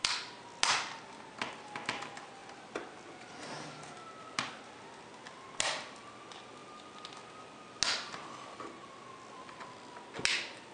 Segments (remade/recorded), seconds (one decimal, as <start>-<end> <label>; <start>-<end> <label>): 0.0-10.7 recorded

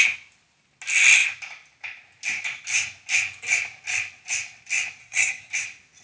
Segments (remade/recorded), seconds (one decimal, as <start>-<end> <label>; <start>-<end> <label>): 0.0-5.0 recorded; 5.0-5.5 remade; 5.5-6.0 recorded

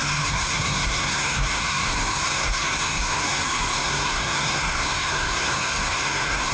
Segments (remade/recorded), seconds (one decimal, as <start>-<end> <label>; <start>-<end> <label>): 0.0-6.5 remade

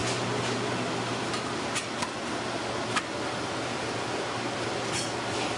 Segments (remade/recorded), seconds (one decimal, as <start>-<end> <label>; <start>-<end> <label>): 0.0-5.6 recorded

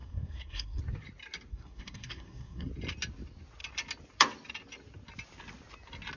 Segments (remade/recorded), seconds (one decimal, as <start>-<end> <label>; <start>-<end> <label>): 0.0-0.8 remade; 0.8-1.5 recorded; 1.5-2.7 remade; 2.7-6.2 recorded

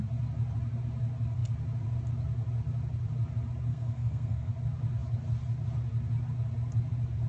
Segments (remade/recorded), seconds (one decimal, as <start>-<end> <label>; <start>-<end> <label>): 0.0-3.7 recorded; 3.7-4.5 remade; 4.5-7.3 recorded

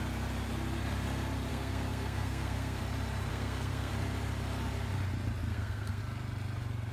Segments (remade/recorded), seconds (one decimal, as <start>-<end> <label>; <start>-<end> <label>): 0.0-1.5 recorded; 1.5-2.8 remade; 2.8-3.3 recorded; 3.3-3.9 remade; 3.9-5.4 recorded; 5.4-6.0 remade; 6.0-6.9 recorded

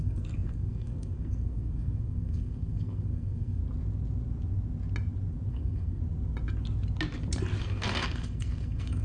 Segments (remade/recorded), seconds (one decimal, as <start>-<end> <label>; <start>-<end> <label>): 0.0-3.6 remade; 3.6-5.5 recorded; 5.5-6.0 remade; 6.0-7.6 recorded; 7.6-9.0 remade